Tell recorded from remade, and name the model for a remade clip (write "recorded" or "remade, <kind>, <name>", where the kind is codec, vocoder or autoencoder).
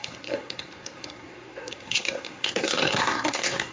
remade, codec, SNAC